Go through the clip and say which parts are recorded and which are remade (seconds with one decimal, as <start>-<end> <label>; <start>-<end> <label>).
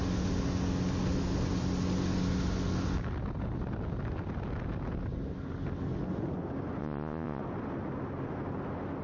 0.0-6.8 recorded; 6.8-7.4 remade; 7.4-9.0 recorded